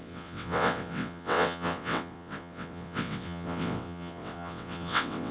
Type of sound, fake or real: fake